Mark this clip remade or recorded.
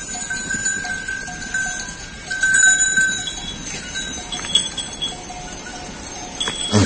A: recorded